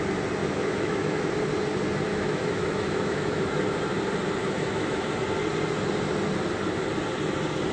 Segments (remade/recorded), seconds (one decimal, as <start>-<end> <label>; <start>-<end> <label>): 0.0-0.4 recorded; 0.4-1.3 remade; 1.3-2.1 recorded; 2.1-3.7 remade; 3.7-4.4 recorded; 4.4-5.1 remade; 5.1-7.7 recorded